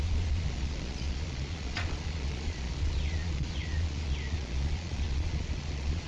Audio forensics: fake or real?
fake